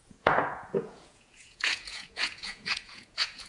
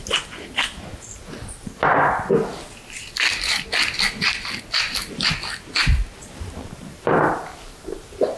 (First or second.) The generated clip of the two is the first